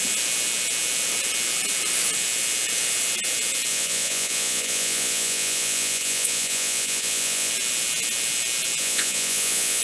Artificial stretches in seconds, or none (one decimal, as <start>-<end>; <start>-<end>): 3.7-7.5; 8.8-9.8